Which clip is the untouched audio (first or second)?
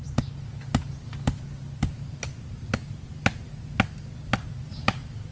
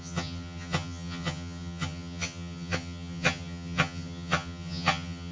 first